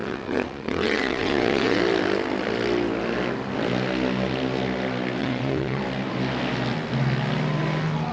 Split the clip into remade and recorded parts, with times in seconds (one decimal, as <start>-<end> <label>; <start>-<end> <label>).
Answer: 0.0-1.8 remade; 1.8-5.2 recorded; 5.2-5.8 remade; 5.8-8.1 recorded